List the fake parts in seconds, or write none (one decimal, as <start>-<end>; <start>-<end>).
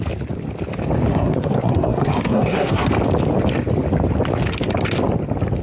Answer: 1.1-2.9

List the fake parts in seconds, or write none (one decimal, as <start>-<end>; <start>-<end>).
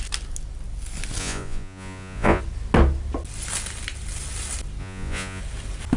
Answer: 1.2-2.4; 4.8-5.4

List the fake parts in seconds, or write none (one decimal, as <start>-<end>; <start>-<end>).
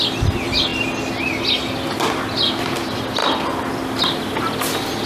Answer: none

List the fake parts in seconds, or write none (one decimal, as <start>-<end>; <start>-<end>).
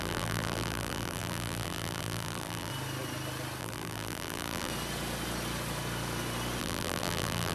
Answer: 0.0-2.7; 3.6-4.7; 6.6-7.5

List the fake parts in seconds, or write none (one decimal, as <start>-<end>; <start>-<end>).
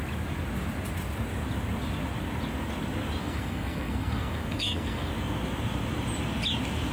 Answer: 3.2-5.1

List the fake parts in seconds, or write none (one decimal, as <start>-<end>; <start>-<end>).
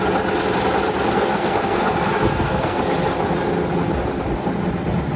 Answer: 1.1-2.8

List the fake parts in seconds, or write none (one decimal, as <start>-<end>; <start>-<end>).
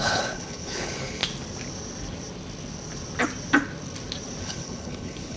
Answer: 0.0-1.2; 4.4-5.4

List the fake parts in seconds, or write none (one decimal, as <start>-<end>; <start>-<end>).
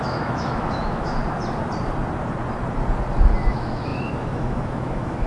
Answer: 0.0-1.2; 3.5-5.3